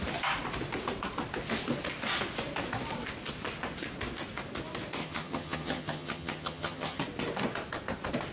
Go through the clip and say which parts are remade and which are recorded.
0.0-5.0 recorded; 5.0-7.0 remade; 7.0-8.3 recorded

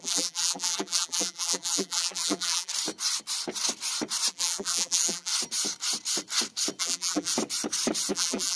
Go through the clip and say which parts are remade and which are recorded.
0.0-2.7 remade; 2.7-4.3 recorded; 4.3-5.3 remade; 5.3-6.8 recorded; 6.8-7.3 remade; 7.3-8.1 recorded; 8.1-8.6 remade

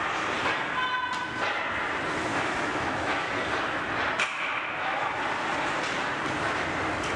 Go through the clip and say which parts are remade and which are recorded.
0.0-2.3 recorded; 2.3-3.3 remade; 3.3-4.3 recorded; 4.3-5.2 remade; 5.2-7.2 recorded

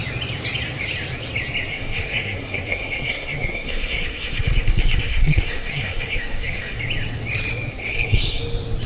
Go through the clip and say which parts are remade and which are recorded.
0.0-1.7 recorded; 1.7-6.8 remade; 6.8-7.7 recorded; 7.7-8.4 remade; 8.4-8.9 recorded

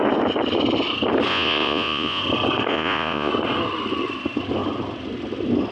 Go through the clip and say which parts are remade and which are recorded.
0.0-1.3 recorded; 1.3-2.2 remade; 2.2-2.7 recorded; 2.7-3.3 remade; 3.3-5.7 recorded

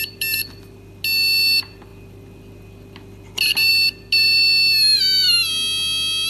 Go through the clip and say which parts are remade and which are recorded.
0.0-6.3 recorded

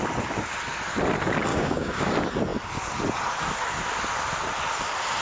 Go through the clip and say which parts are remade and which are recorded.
0.0-1.5 recorded; 1.5-2.1 remade; 2.1-5.2 recorded

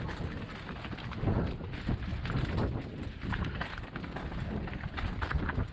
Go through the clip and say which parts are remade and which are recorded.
0.0-5.7 recorded